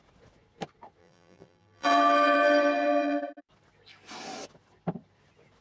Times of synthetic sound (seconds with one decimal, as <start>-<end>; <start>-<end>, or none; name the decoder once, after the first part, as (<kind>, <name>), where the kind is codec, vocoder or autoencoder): 1.0-3.2 (vocoder, BigVGAN v2)